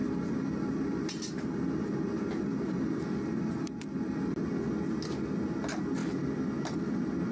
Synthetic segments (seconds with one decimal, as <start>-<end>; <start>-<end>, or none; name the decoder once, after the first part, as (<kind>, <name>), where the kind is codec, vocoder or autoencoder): none